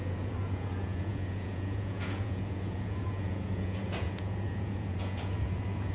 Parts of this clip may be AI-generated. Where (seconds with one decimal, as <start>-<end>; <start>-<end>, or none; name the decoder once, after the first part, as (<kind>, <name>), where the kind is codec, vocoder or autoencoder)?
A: 0.0-5.9 (vocoder, Vocos)